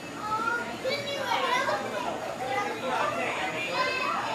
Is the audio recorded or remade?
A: recorded